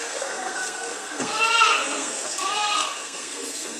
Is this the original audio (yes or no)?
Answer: no